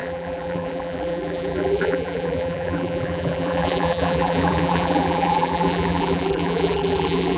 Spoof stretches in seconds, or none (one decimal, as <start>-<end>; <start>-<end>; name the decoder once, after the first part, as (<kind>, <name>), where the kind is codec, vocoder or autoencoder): 0.0-7.4 (vocoder, BigVGAN v2)